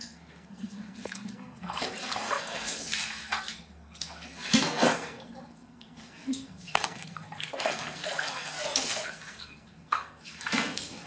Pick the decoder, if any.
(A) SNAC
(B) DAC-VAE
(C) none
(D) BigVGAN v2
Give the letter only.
A